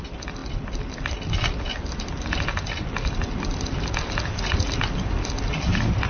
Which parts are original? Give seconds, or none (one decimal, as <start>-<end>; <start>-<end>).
0.0-6.1